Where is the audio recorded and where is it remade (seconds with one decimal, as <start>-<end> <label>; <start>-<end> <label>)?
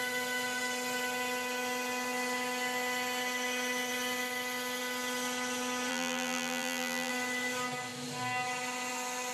0.0-5.9 recorded; 5.9-7.1 remade; 7.1-9.3 recorded